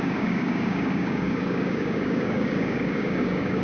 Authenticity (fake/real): fake